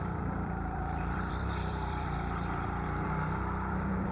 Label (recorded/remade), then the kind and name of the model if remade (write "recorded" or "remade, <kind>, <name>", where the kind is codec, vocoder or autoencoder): remade, vocoder, BigVGAN v2